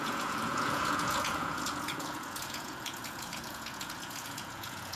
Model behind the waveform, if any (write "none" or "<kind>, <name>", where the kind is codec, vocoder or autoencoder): vocoder, Vocos